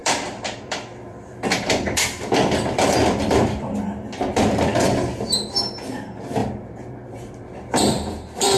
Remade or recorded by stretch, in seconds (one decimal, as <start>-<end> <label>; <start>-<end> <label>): 0.0-3.7 remade; 3.7-4.7 recorded; 4.7-5.3 remade; 5.3-6.4 recorded; 6.4-8.6 remade